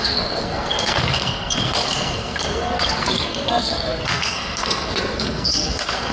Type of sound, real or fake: fake